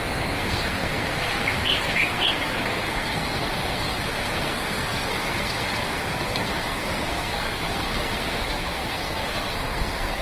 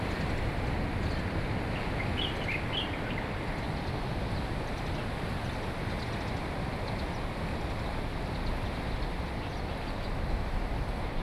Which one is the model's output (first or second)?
first